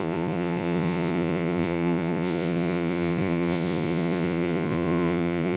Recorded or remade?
remade